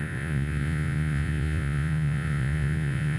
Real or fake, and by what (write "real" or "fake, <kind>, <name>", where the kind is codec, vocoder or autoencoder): fake, vocoder, Vocos